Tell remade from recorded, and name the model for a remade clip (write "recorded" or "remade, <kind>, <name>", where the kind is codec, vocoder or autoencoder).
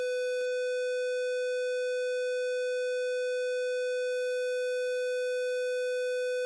recorded